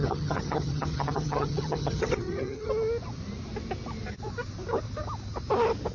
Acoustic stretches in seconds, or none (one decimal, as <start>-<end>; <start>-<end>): 2.7-5.9